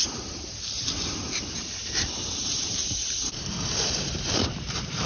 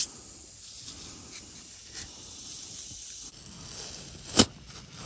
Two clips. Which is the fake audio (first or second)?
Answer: first